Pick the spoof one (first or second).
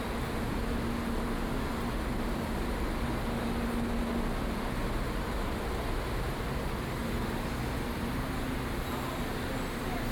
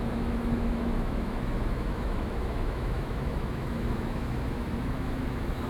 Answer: second